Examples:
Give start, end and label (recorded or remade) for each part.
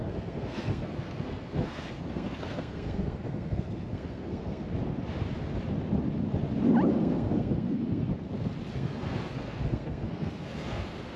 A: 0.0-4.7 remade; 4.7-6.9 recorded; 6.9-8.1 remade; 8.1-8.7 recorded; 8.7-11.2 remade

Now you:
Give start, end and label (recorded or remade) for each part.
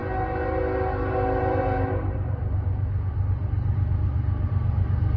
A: 0.0-5.2 recorded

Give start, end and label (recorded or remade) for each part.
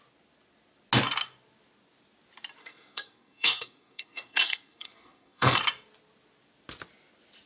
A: 0.0-2.6 recorded; 2.6-5.6 remade; 5.6-7.5 recorded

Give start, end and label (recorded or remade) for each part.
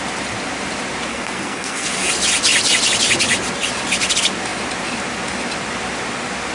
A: 0.0-1.1 recorded; 1.1-2.1 remade; 2.1-6.5 recorded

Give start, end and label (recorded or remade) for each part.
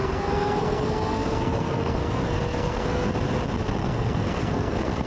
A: 0.0-3.1 remade; 3.1-3.8 recorded; 3.8-5.1 remade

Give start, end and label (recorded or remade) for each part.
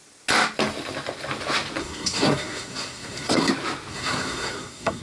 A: 0.0-1.8 recorded; 1.8-3.5 remade; 3.5-3.9 recorded; 3.9-5.0 remade